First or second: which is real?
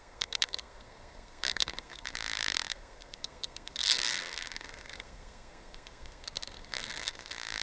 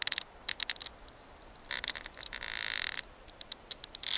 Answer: second